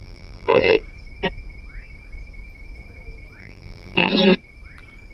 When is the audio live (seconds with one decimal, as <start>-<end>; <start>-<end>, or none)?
0.8-3.4; 4.1-5.1